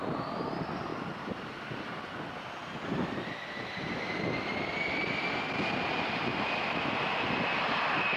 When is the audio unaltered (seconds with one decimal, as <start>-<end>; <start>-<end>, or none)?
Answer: 0.0-8.2